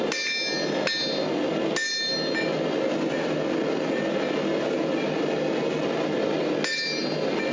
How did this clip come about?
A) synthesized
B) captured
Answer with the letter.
B